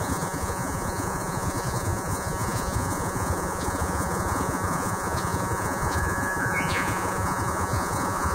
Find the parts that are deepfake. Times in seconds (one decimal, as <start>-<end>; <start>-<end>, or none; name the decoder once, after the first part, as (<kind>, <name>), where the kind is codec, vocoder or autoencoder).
0.0-8.3 (vocoder, Vocos)